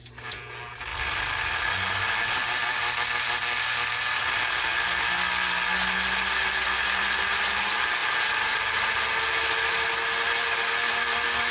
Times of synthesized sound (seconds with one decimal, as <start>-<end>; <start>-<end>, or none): none